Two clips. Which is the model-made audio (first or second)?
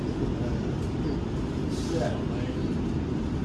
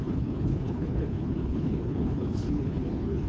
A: second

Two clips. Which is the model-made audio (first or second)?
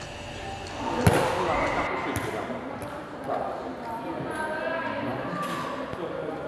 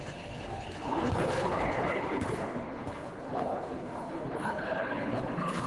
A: second